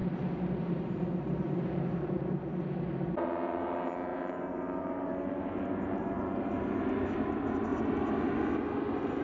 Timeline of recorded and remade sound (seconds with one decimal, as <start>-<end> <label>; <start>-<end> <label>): 0.0-2.7 remade; 2.7-4.1 recorded; 4.1-6.2 remade; 6.2-7.7 recorded; 7.7-8.2 remade; 8.2-9.2 recorded